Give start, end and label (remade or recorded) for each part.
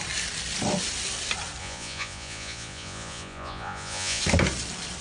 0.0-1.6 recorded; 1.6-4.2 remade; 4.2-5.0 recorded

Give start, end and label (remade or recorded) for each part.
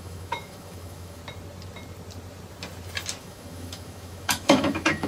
0.0-1.2 remade; 1.2-3.2 recorded; 3.2-5.1 remade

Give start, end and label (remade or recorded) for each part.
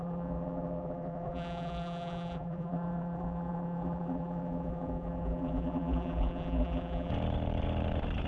0.0-7.1 remade; 7.1-8.3 recorded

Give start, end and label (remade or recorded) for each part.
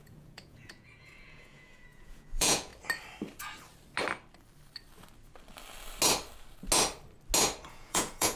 0.0-2.7 remade; 2.7-7.7 recorded; 7.7-8.4 remade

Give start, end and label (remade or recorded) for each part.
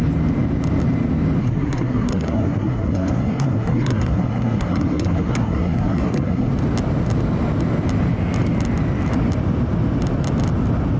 0.0-1.4 recorded; 1.4-6.5 remade; 6.5-11.0 recorded